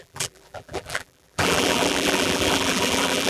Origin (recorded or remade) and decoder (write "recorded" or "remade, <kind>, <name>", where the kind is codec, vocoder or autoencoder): remade, vocoder, BigVGAN v2